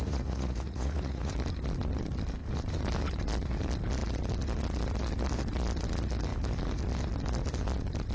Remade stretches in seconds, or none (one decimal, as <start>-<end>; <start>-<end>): 0.0-1.3